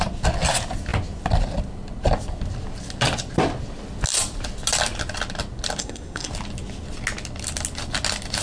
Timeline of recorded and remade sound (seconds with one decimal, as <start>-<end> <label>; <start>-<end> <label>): 0.0-5.8 recorded; 5.8-6.3 remade; 6.3-8.4 recorded